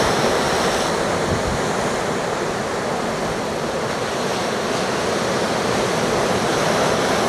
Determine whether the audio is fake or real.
real